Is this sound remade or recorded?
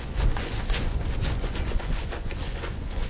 remade